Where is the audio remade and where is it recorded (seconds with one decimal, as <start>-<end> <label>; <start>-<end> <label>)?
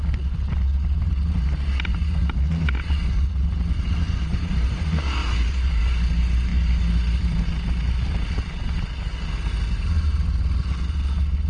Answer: 0.0-4.3 recorded; 4.3-4.8 remade; 4.8-5.2 recorded; 5.2-5.8 remade; 5.8-11.5 recorded